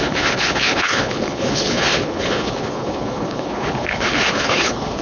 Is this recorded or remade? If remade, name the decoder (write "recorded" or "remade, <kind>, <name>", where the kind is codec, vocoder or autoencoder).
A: remade, codec, HILCodec